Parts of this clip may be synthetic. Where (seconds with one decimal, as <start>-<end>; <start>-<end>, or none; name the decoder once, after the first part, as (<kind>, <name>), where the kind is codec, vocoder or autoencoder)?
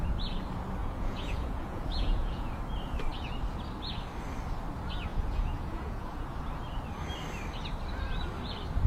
0.8-2.6 (vocoder, Vocos); 5.1-6.4